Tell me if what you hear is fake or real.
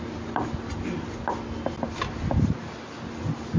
real